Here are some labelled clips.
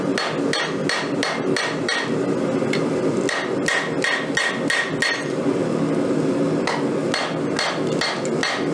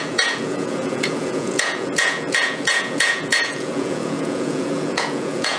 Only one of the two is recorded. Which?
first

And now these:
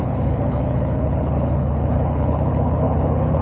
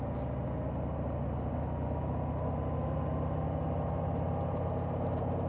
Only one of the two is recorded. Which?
second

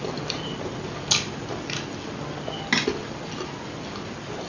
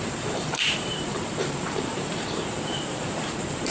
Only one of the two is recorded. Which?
first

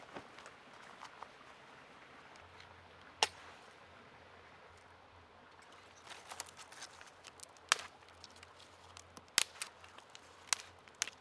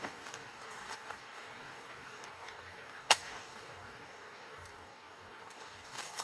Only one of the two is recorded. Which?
first